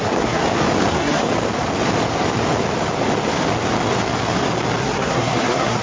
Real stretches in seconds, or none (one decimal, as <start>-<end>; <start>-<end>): 0.4-0.9; 1.3-4.8